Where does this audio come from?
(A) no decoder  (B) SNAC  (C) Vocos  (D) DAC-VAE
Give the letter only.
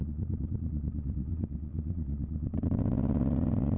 C